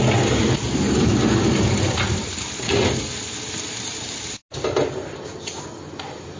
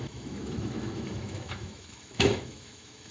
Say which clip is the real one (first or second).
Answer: first